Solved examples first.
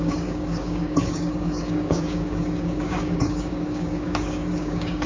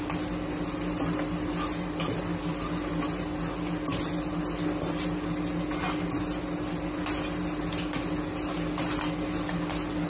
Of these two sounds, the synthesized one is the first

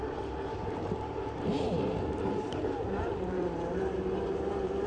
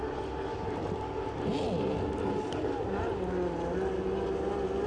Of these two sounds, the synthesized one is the first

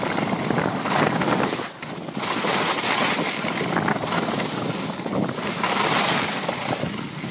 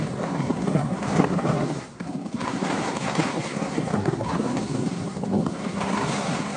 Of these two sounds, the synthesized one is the second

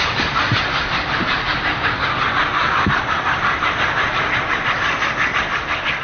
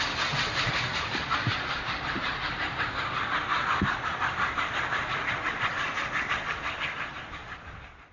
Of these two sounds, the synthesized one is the second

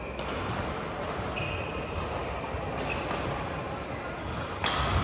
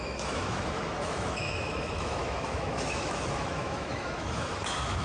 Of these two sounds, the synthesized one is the second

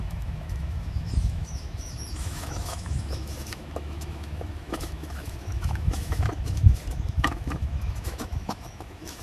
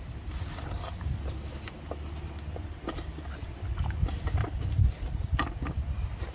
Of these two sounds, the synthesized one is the first